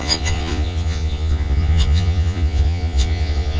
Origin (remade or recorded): remade